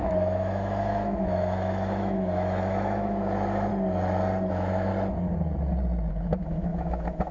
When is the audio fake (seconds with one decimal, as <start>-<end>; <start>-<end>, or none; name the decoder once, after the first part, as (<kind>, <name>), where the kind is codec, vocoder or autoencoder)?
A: 0.0-3.7 (autoencoder, DAC-VAE); 4.5-4.9; 6.1-7.3